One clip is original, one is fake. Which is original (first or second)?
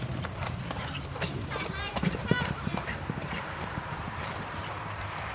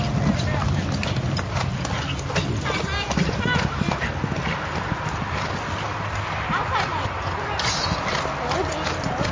second